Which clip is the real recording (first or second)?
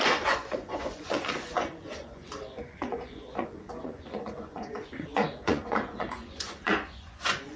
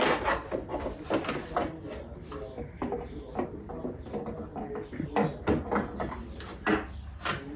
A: second